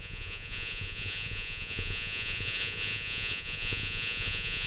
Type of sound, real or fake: fake